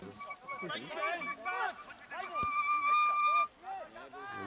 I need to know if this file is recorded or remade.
recorded